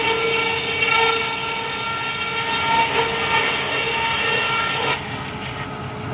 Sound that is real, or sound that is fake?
real